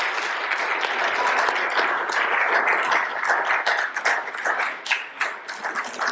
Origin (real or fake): real